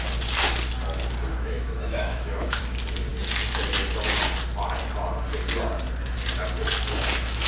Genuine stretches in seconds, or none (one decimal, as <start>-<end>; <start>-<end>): 0.0-1.3; 2.6-7.5